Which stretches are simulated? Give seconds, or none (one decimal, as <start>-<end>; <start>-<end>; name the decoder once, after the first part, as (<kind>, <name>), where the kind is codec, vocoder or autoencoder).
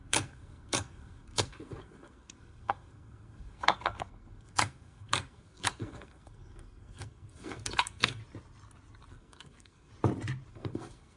0.0-8.2 (codec, SNAC); 9.1-9.9; 10.5-11.2